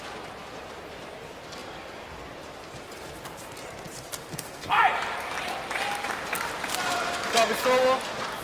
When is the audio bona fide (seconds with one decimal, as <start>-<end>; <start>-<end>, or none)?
0.0-4.3; 4.8-8.4